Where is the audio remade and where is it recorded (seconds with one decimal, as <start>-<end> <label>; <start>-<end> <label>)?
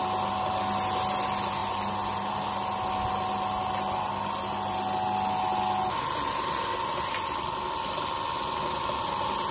0.0-9.5 recorded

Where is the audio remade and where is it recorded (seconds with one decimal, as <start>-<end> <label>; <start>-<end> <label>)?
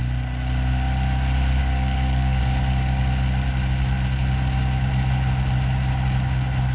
0.0-1.6 recorded; 1.6-2.4 remade; 2.4-6.7 recorded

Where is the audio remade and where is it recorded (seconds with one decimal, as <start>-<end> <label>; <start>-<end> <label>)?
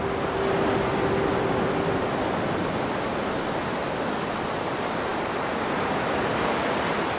0.0-7.2 recorded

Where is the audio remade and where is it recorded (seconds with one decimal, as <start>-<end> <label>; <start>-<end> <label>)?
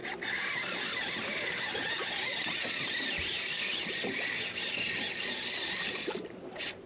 0.0-6.9 recorded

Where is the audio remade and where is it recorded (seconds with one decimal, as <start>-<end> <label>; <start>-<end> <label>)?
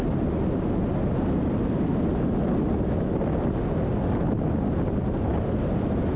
0.0-6.2 recorded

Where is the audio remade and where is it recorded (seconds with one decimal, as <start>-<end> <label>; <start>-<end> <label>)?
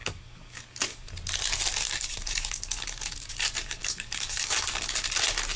0.0-1.1 remade; 1.1-1.8 recorded; 1.8-5.1 remade; 5.1-5.6 recorded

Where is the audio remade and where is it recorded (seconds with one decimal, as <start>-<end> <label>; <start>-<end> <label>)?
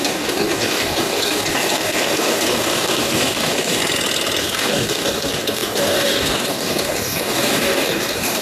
0.0-3.8 remade; 3.8-4.4 recorded; 4.4-8.4 remade